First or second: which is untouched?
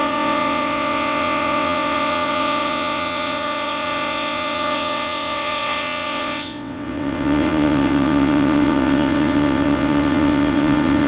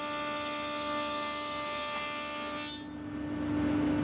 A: second